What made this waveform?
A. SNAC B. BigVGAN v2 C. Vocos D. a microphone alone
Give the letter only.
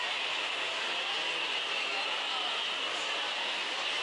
B